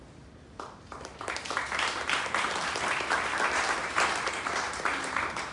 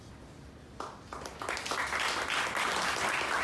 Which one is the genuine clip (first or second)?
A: second